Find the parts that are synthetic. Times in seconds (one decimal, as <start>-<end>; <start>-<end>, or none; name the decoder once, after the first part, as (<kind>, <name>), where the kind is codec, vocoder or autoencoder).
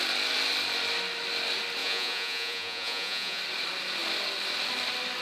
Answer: 1.8-3.4 (vocoder, Vocos)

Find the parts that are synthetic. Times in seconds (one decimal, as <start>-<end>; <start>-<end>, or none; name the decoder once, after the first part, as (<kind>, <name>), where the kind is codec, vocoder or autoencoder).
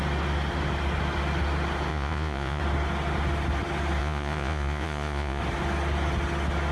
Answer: 1.9-2.6 (vocoder, Vocos); 4.0-5.4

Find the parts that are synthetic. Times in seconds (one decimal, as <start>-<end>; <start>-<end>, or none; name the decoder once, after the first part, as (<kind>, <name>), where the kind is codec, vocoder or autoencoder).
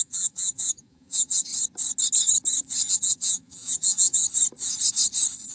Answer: 0.0-1.5 (vocoder, Vocos); 2.9-4.2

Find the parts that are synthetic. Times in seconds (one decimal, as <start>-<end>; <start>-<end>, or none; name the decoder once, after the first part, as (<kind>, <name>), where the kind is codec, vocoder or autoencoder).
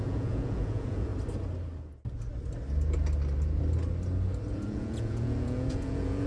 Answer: 0.0-1.1 (vocoder, Vocos); 4.5-6.3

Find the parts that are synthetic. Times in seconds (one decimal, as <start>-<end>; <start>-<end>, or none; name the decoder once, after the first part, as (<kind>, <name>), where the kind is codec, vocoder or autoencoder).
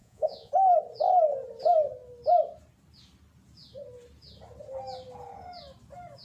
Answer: 0.0-0.5 (vocoder, Vocos)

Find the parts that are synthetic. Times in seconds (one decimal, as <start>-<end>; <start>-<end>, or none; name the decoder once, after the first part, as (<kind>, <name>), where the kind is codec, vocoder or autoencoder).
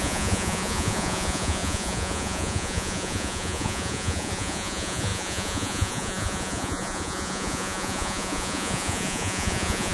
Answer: 0.0-9.9 (vocoder, Vocos)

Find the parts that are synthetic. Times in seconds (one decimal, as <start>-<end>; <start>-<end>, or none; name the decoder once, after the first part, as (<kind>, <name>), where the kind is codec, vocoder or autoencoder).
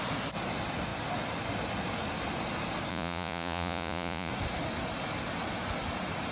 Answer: 2.9-4.3 (vocoder, Vocos)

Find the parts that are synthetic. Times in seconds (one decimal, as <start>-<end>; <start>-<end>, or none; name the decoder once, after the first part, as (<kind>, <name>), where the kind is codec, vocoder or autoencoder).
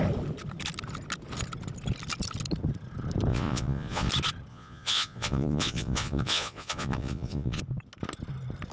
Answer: 3.3-4.1 (vocoder, Vocos); 4.5-7.6